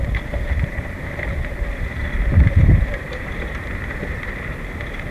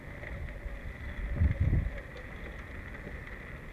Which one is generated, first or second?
first